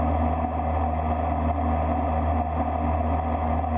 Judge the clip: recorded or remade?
recorded